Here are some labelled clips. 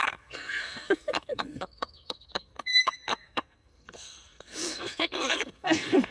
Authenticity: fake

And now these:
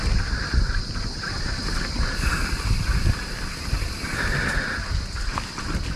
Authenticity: real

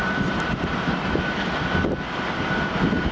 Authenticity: real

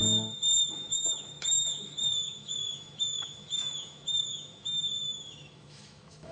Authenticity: fake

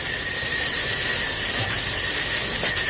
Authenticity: real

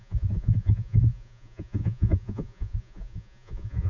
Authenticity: fake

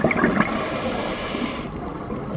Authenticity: fake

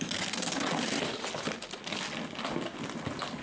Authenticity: real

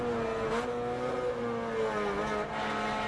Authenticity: real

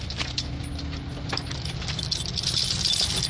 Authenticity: real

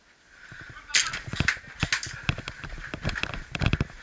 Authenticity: real